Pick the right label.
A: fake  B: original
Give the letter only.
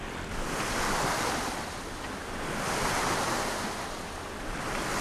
B